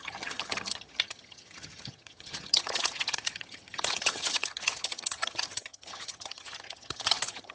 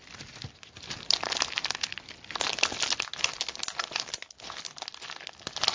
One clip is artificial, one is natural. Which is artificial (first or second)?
first